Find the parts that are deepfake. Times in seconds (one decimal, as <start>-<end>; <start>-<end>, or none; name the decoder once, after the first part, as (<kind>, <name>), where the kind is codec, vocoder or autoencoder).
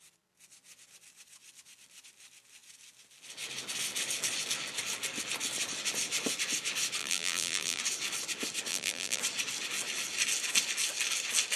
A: 7.0-7.8 (vocoder, BigVGAN v2); 8.7-9.2